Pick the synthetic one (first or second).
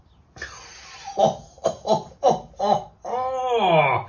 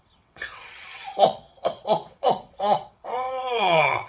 second